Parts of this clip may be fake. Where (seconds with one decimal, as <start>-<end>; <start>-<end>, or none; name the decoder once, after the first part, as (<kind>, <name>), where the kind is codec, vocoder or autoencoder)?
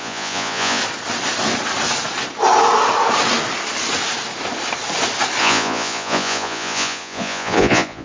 0.0-0.8 (vocoder, Vocos); 5.4-8.0